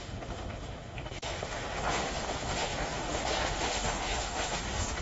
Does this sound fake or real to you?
fake